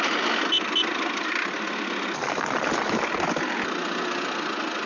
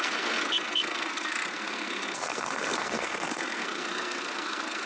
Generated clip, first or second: second